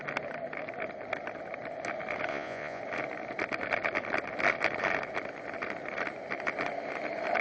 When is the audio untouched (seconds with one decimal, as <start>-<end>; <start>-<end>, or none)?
0.0-2.3; 2.8-7.4